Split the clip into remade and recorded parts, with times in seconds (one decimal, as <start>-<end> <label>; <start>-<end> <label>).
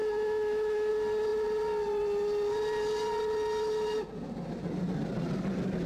0.0-0.9 remade; 0.9-5.9 recorded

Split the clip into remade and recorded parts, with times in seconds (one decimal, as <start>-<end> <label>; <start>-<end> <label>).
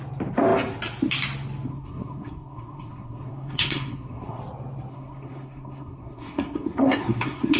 0.0-1.7 recorded; 1.7-4.4 remade; 4.4-4.9 recorded; 4.9-7.6 remade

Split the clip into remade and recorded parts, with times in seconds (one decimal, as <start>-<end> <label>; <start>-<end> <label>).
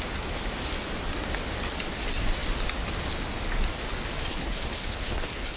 0.0-4.3 recorded; 4.3-5.6 remade